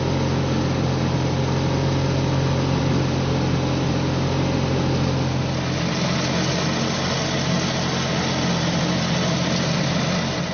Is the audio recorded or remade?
recorded